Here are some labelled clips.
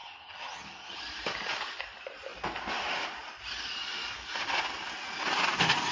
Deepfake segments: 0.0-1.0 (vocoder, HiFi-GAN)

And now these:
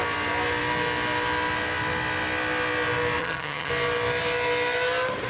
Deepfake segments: 3.2-3.7 (vocoder, HiFi-GAN)